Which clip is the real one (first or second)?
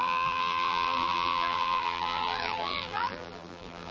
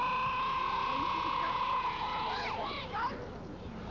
second